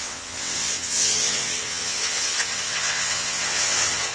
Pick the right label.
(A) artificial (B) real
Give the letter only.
A